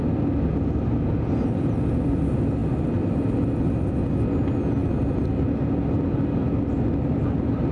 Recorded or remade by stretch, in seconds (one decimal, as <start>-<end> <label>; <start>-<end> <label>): 0.0-7.7 recorded

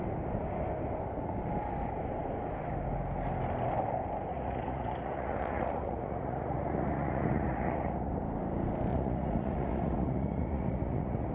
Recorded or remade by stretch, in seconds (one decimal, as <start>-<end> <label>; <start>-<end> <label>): 0.0-4.3 recorded; 4.3-8.1 remade; 8.1-8.9 recorded; 8.9-11.3 remade

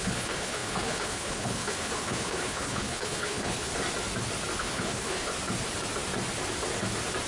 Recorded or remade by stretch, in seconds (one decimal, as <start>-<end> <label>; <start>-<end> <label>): 0.0-3.7 remade; 3.7-4.6 recorded; 4.6-5.3 remade; 5.3-7.3 recorded

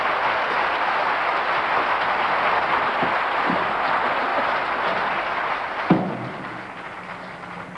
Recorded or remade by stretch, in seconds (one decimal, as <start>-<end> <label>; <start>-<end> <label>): 0.0-7.8 recorded

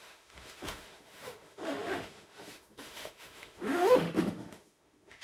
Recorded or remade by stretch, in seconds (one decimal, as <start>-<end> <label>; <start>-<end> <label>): 0.0-5.2 remade

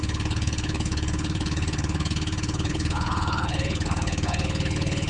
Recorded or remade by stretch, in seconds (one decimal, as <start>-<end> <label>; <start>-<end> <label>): 0.0-5.1 remade

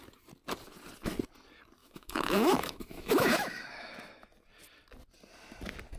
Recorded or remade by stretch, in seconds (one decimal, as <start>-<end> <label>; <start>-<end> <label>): 0.0-1.8 recorded; 1.8-4.0 remade; 4.0-6.0 recorded

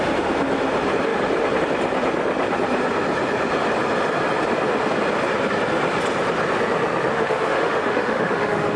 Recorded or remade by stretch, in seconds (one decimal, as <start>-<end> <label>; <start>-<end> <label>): 0.0-7.1 recorded; 7.1-8.8 remade